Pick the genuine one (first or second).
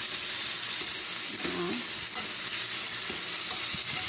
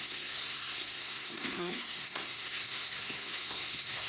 first